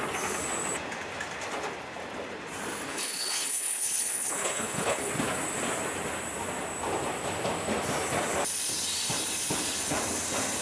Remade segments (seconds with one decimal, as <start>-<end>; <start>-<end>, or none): 2.9-5.1